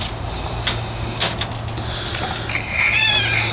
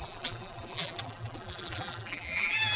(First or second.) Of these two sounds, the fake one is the second